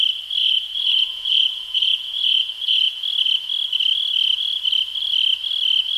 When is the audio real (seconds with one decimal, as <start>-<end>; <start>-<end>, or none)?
0.0-0.4; 3.0-6.0